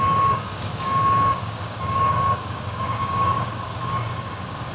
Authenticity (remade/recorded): remade